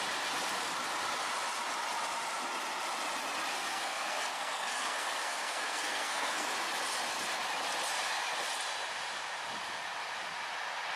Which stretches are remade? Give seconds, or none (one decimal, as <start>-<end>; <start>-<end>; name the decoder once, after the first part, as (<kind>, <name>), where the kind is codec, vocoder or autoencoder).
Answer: 3.5-6.5 (codec, SNAC)